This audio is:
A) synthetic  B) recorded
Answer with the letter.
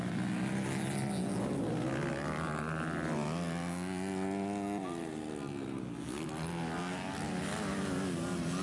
B